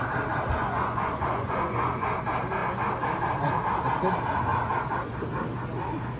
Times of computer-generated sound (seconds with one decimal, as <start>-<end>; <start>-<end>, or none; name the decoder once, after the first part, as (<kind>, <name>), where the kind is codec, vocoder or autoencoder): 0.6-2.2 (vocoder, Vocos)